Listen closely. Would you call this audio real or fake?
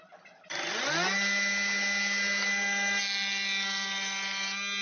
real